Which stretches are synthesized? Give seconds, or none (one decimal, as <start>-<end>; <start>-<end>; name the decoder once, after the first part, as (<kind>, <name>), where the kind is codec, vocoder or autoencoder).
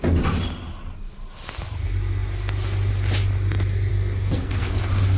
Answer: 3.9-4.8 (codec, SNAC)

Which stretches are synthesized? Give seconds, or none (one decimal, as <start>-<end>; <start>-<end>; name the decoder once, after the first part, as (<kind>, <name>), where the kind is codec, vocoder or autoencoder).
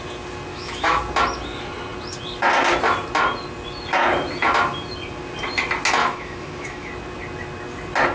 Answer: 0.5-1.0 (autoencoder, DAC-VAE); 6.0-6.9